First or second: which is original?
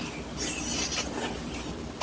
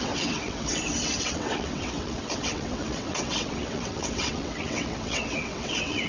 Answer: first